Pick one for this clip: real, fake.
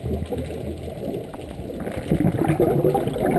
real